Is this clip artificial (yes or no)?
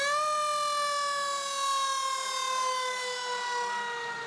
no